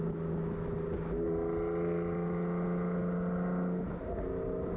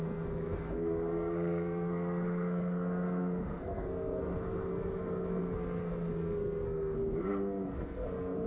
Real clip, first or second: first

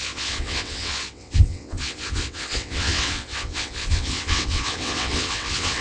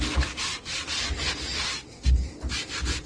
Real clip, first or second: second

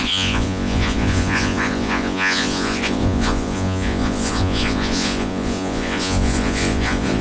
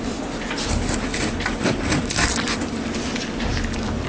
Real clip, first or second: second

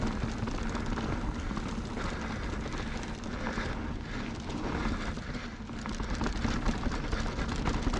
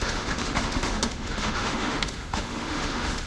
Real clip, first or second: first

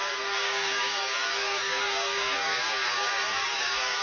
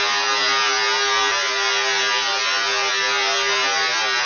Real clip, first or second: second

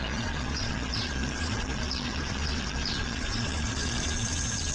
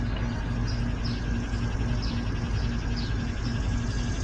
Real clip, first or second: second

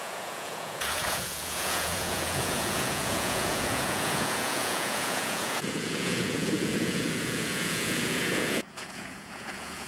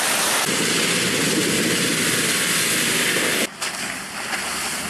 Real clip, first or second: second